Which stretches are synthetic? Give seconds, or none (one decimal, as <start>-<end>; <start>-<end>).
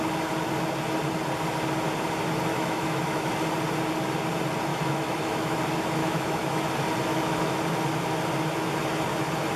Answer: 2.5-3.3; 4.7-5.6; 6.0-6.6; 7.1-7.6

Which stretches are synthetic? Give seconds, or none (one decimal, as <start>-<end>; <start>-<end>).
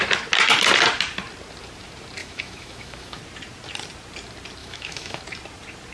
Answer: 2.2-3.2; 4.6-5.2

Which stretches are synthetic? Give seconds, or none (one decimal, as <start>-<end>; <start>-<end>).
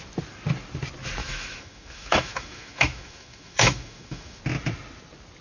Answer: 1.2-4.4